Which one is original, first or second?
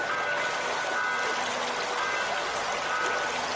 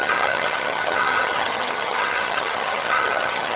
first